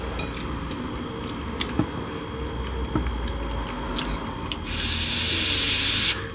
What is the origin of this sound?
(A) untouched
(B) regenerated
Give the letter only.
A